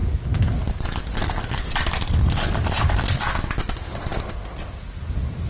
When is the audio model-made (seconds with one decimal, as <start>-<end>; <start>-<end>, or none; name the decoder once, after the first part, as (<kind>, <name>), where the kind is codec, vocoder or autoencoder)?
none